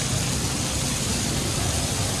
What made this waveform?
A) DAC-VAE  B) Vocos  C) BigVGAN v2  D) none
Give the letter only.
D